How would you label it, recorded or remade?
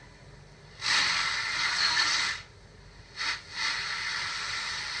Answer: recorded